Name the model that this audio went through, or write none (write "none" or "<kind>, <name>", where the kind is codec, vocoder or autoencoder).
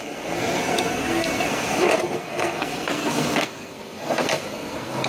codec, SNAC